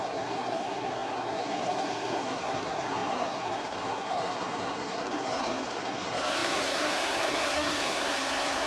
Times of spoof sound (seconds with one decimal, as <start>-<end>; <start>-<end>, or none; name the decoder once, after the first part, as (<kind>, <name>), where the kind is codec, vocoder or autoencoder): 0.0-8.7 (codec, SNAC)